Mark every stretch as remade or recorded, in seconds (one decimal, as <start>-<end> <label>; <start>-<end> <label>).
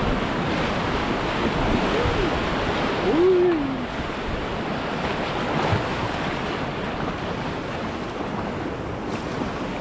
0.0-9.8 recorded